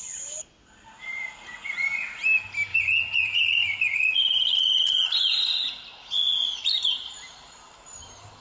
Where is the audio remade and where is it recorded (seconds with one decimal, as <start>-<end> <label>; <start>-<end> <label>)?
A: 0.0-1.0 recorded; 1.0-2.2 remade; 2.2-2.7 recorded; 2.7-7.1 remade; 7.1-8.4 recorded